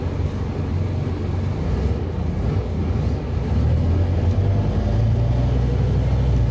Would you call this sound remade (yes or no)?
no